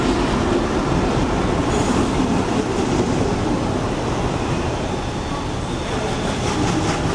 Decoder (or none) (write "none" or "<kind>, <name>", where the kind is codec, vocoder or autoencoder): none